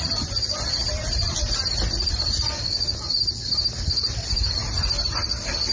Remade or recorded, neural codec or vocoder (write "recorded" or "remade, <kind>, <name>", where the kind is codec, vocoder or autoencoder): recorded